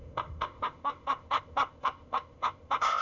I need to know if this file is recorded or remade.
remade